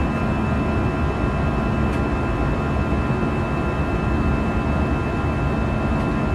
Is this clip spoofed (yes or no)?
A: no